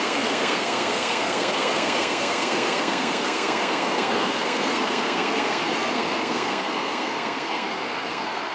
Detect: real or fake fake